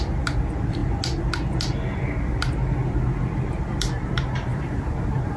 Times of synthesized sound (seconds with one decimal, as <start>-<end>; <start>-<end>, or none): 4.5-5.4